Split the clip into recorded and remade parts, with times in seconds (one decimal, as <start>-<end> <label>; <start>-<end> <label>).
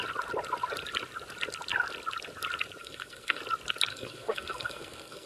0.0-2.8 recorded; 2.8-3.4 remade; 3.4-3.9 recorded; 3.9-5.3 remade